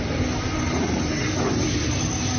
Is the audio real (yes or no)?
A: yes